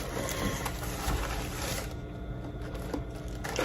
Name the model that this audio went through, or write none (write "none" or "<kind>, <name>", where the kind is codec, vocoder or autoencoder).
none